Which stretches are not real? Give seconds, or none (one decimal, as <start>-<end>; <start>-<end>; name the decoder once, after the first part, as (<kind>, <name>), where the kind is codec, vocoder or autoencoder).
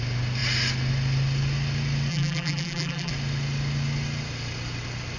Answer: 2.1-3.1 (vocoder, BigVGAN v2)